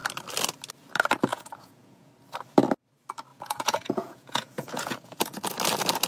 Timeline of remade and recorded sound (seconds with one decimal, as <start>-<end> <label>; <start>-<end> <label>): 0.0-1.3 recorded; 1.3-2.1 remade; 2.1-3.3 recorded; 3.3-5.4 remade; 5.4-6.1 recorded